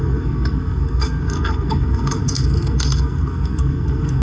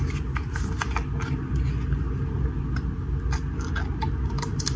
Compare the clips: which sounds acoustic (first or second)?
second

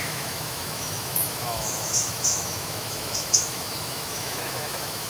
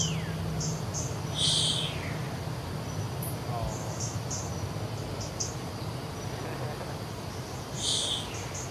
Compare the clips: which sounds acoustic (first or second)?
second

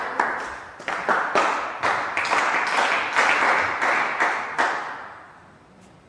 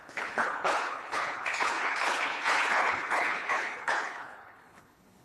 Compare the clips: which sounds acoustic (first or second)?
first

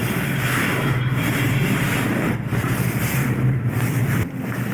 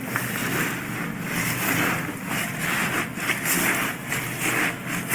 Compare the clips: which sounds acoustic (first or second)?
second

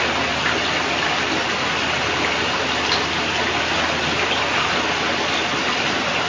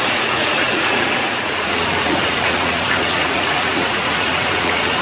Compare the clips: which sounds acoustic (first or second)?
first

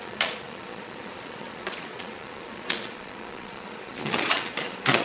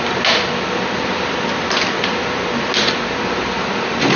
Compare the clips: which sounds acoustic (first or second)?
second